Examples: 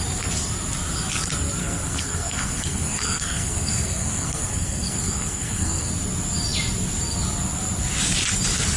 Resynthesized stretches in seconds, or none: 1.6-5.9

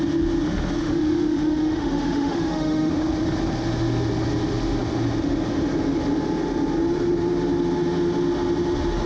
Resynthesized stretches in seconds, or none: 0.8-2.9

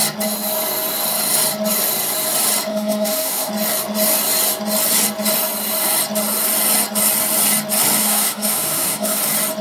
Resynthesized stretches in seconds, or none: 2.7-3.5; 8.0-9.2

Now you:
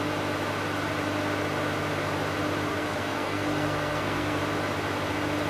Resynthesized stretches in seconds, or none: 2.7-4.4

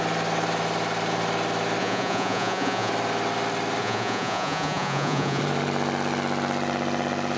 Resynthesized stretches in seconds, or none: 1.8-2.9; 3.8-5.4

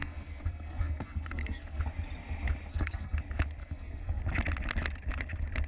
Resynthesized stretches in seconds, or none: 0.0-1.8; 2.7-3.2; 3.6-4.2

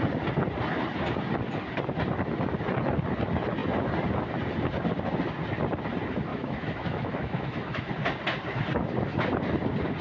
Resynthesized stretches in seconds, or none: 6.3-7.9